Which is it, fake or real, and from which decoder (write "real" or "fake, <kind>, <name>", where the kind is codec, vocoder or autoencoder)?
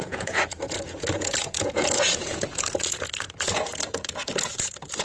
fake, vocoder, Vocos